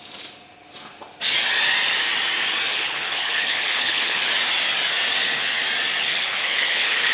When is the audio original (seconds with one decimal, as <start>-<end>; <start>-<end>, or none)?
0.0-2.7; 4.3-6.0